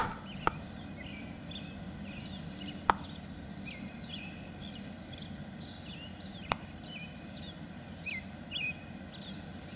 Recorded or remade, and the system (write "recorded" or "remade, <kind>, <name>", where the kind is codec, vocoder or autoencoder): recorded